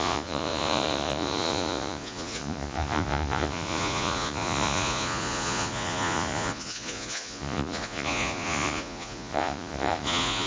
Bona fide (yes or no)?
no